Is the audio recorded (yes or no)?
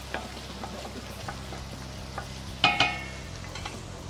yes